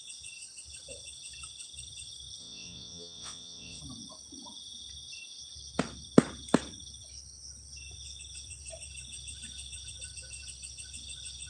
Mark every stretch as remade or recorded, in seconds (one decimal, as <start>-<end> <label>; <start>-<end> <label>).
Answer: 0.0-2.4 recorded; 2.4-3.8 remade; 3.8-11.5 recorded